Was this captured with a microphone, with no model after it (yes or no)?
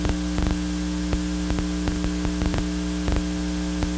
yes